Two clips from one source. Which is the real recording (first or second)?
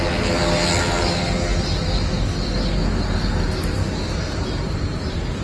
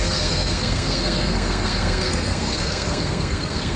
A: first